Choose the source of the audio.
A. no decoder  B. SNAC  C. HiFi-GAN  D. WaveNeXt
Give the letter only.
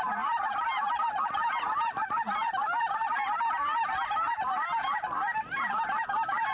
A